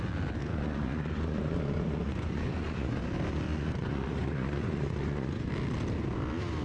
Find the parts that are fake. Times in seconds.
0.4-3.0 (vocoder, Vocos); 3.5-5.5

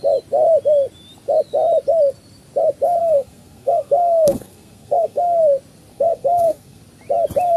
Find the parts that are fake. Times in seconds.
3.0-5.4 (codec, SNAC); 5.9-6.8

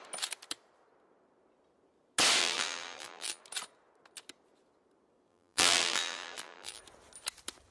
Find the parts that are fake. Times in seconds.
2.4-3.4 (vocoder, BigVGAN v2); 5.3-6.8

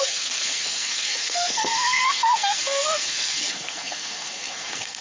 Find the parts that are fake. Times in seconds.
0.0-5.0 (codec, SNAC)